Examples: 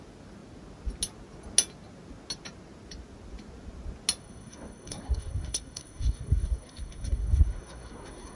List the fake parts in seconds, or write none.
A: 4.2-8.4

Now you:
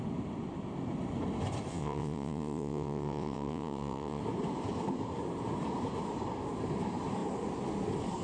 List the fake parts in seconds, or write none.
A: 1.7-4.2

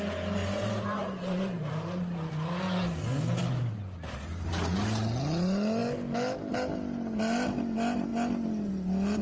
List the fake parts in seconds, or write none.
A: 0.4-2.3

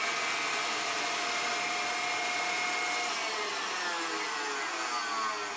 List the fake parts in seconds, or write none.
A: none

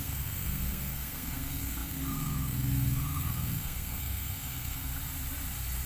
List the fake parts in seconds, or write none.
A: 0.0-4.9